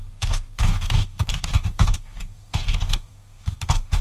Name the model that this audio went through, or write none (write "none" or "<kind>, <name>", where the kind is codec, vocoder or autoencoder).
codec, DAC